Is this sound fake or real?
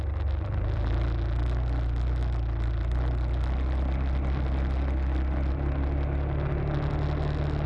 real